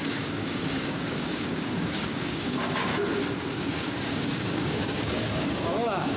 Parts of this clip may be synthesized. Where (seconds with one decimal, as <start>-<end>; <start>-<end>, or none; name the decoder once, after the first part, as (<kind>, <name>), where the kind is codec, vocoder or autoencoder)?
0.0-2.9 (codec, DAC); 3.6-6.2